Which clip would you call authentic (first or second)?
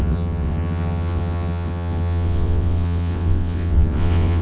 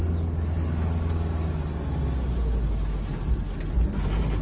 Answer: second